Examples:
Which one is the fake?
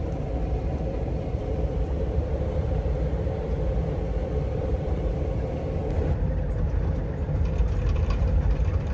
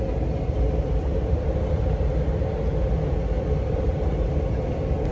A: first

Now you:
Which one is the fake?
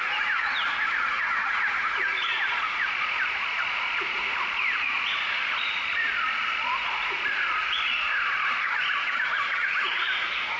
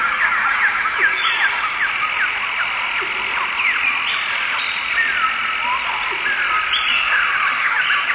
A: first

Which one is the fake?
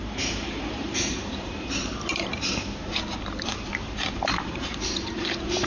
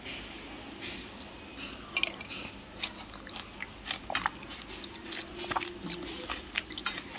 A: first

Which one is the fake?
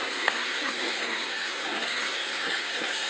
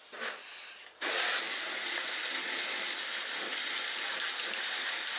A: first